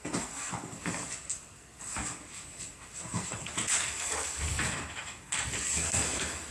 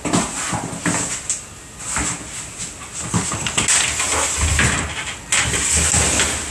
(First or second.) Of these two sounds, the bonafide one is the second